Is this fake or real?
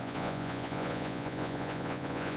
fake